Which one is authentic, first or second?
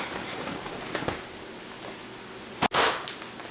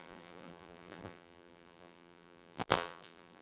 first